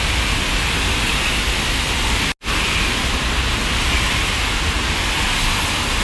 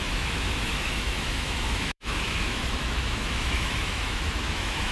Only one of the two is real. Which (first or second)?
first